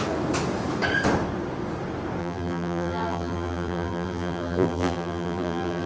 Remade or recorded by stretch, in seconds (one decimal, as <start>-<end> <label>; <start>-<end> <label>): 0.0-2.2 recorded; 2.2-5.9 remade

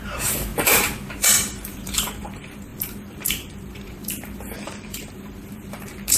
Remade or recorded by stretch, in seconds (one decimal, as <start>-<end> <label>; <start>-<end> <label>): 0.0-6.2 remade

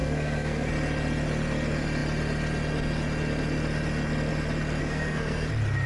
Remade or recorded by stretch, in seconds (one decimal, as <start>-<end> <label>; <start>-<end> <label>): 0.0-0.7 remade; 0.7-4.8 recorded; 4.8-5.5 remade; 5.5-5.9 recorded

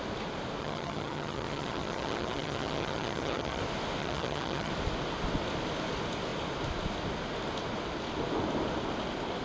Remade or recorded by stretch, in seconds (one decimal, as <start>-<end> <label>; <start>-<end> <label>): 0.0-0.6 recorded; 0.6-3.6 remade; 3.6-4.0 recorded; 4.0-4.7 remade; 4.7-9.4 recorded

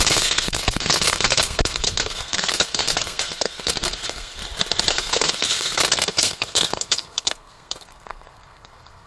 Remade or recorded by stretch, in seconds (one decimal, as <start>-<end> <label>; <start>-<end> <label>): 0.0-4.4 remade; 4.4-4.9 recorded; 4.9-9.1 remade

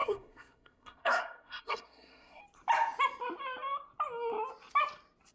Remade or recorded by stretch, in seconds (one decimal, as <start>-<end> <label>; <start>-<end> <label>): 0.0-2.4 remade; 2.4-5.3 recorded